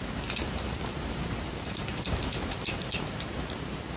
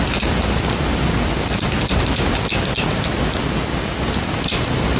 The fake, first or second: first